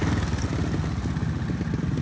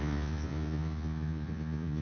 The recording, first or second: first